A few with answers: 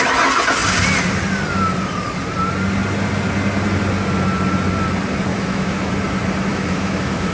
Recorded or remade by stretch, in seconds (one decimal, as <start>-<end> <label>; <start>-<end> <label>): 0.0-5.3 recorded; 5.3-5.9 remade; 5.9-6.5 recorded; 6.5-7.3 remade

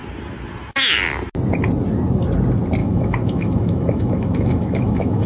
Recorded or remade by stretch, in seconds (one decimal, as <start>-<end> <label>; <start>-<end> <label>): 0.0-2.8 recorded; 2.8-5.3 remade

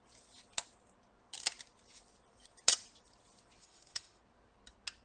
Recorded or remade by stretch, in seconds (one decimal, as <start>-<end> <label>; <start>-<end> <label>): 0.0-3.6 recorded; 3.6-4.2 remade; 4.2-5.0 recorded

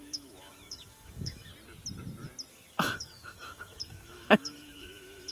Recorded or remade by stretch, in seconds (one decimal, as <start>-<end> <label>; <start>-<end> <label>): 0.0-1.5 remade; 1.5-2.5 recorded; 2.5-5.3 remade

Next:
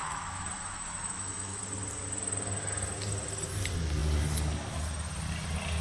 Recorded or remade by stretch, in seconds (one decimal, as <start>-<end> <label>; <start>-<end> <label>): 0.0-1.6 remade; 1.6-5.8 recorded

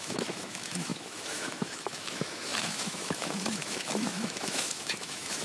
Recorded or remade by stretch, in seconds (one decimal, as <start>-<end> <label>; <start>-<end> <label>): 0.0-5.4 remade

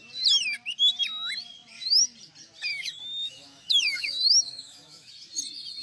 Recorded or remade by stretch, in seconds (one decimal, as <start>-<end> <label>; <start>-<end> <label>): 0.0-2.7 recorded; 2.7-5.1 remade; 5.1-5.8 recorded

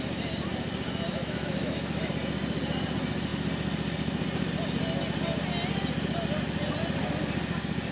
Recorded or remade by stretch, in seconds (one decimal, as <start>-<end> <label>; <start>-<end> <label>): 0.0-1.1 recorded; 1.1-2.1 remade; 2.1-7.9 recorded